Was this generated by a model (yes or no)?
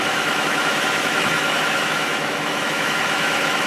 yes